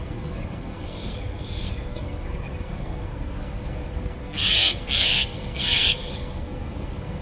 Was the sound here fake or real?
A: fake